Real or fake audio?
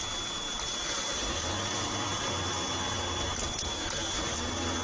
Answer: real